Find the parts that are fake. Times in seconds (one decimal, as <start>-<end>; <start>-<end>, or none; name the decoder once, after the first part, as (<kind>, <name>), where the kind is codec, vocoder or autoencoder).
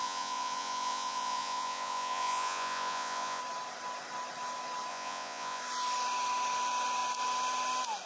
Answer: 0.0-3.4 (vocoder, Vocos); 4.9-5.6